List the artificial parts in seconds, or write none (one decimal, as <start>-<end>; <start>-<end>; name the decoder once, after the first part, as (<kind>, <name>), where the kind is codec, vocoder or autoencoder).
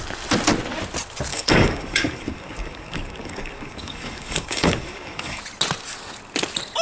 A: 1.3-5.4 (codec, DAC)